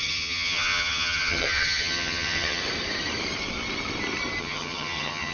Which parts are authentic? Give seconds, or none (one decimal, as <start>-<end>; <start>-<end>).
2.6-4.4